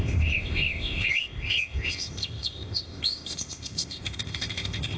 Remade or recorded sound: remade